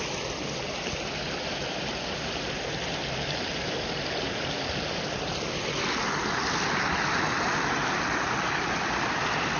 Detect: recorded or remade recorded